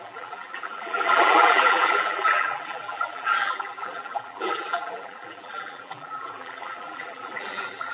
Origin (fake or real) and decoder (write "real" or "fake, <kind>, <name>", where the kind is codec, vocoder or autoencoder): fake, vocoder, BigVGAN v2